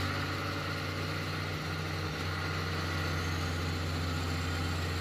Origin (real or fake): real